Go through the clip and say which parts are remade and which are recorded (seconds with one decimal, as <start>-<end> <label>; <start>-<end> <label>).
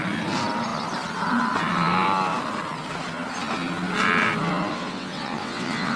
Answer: 0.0-4.7 recorded; 4.7-6.0 remade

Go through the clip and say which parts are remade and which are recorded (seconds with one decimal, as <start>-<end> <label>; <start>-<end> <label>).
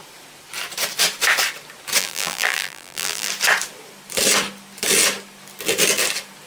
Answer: 0.0-2.0 recorded; 2.0-3.3 remade; 3.3-6.5 recorded